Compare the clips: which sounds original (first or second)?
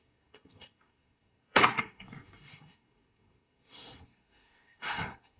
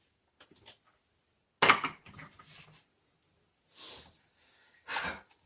second